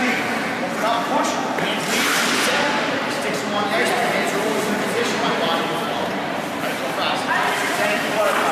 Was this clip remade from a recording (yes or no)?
no